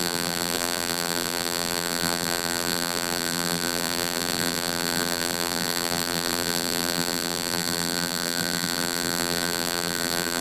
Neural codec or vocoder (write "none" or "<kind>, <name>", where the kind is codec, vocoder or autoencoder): vocoder, BigVGAN v2